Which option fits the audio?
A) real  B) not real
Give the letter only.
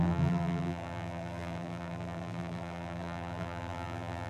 B